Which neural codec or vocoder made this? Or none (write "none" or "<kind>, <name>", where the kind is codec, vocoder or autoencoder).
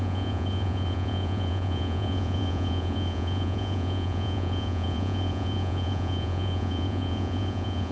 vocoder, Vocos